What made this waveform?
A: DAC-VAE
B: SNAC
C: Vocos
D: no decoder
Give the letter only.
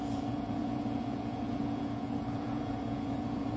C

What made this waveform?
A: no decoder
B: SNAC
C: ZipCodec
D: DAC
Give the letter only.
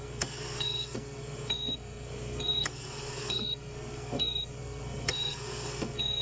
B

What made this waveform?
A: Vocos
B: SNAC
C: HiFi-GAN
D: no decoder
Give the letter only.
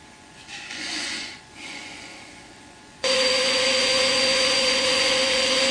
A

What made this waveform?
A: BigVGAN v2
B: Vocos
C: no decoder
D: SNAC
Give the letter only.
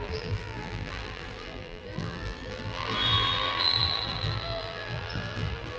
A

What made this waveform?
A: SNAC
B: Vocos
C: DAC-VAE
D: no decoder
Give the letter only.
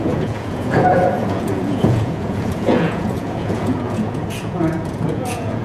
B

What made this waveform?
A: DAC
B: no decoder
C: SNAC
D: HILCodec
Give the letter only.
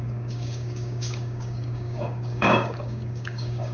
A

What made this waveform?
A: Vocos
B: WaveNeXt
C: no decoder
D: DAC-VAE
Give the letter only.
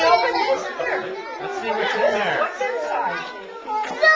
C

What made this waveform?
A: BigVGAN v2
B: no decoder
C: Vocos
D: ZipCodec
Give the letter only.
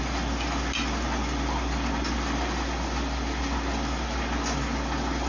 B